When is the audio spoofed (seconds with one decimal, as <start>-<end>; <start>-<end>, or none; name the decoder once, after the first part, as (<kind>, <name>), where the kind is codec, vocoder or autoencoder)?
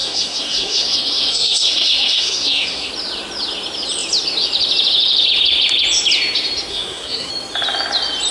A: 0.0-2.9 (codec, SNAC); 6.7-7.3